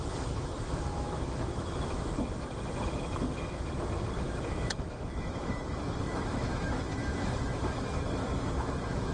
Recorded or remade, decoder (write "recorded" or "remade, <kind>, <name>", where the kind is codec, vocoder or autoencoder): remade, autoencoder, DAC-VAE